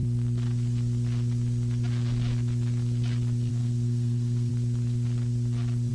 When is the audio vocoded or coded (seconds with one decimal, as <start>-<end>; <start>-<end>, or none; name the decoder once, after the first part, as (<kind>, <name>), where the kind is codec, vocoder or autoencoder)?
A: 3.5-4.5 (codec, SNAC)